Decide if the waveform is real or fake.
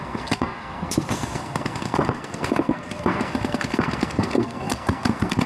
fake